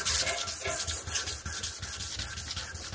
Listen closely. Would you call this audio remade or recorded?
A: recorded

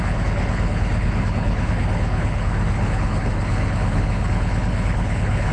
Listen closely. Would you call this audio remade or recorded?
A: remade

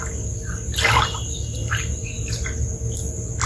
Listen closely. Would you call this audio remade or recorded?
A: recorded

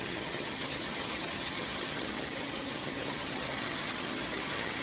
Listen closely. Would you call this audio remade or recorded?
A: remade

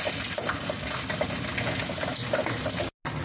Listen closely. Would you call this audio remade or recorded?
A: recorded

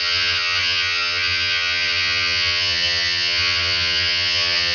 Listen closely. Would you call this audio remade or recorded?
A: remade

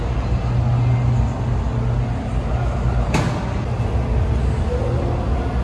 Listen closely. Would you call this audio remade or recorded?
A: recorded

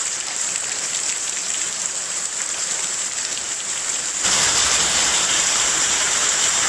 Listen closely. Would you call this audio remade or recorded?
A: remade